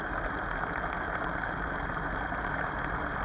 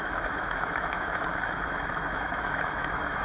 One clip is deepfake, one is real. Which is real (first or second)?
first